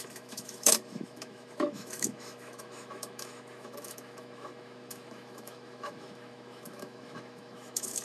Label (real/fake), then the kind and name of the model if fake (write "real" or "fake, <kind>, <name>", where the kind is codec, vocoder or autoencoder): fake, autoencoder, DAC-VAE